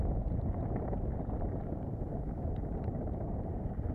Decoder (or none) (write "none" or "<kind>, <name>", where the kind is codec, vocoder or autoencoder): vocoder, BigVGAN v2